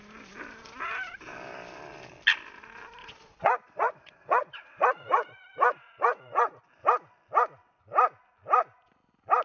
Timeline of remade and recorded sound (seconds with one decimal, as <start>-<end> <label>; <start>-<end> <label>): 0.0-3.0 recorded; 3.0-6.6 remade; 6.6-9.4 recorded